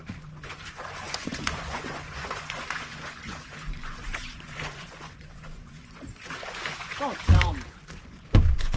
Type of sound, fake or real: fake